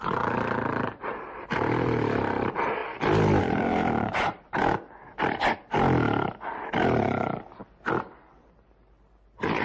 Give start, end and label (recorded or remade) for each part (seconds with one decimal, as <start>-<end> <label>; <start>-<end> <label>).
0.0-2.8 remade; 2.8-3.4 recorded; 3.4-4.6 remade; 4.6-7.9 recorded; 7.9-9.6 remade